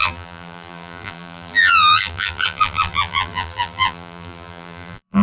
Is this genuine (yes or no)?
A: no